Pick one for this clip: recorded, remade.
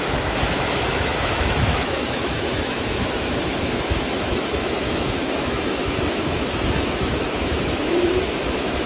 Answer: remade